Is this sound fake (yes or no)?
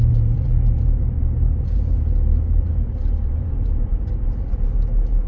yes